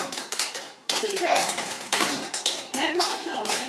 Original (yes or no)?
no